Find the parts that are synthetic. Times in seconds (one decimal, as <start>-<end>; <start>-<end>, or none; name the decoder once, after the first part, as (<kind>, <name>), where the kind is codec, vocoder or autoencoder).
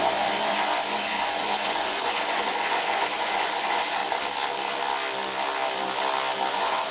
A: 0.0-4.0 (vocoder, Vocos); 6.5-6.9